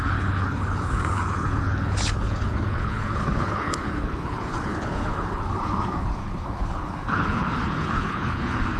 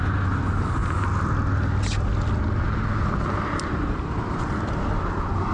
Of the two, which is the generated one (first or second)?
first